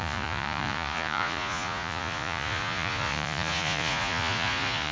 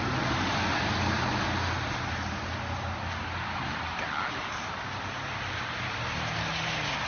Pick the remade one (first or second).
first